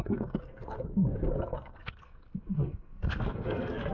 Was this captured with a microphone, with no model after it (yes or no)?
no